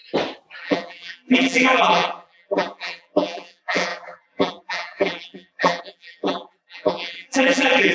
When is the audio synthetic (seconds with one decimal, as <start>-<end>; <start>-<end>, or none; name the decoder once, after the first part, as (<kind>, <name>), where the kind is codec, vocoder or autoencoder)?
0.6-7.9 (vocoder, BigVGAN v2)